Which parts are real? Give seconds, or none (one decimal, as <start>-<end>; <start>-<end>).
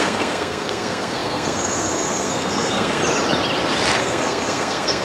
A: 3.0-4.0